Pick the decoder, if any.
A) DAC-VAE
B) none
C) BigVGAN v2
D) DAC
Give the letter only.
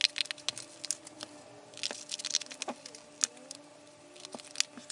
B